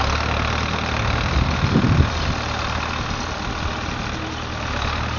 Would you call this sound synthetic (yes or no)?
no